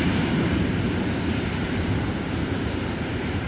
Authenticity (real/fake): fake